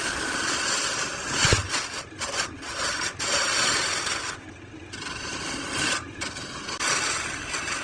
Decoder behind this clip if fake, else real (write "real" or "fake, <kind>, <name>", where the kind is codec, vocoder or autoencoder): real